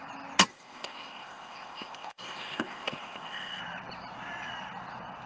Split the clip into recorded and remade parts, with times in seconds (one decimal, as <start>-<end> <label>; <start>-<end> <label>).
0.0-0.5 recorded; 0.5-3.6 remade; 3.6-5.3 recorded